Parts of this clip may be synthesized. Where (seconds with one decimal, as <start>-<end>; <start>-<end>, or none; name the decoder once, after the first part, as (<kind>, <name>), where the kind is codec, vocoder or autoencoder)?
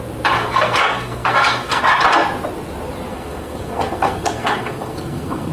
0.4-1.8 (codec, SNAC); 3.1-5.5